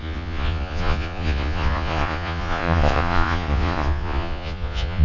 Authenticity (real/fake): fake